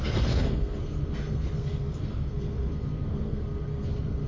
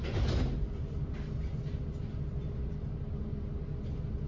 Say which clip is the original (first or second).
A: second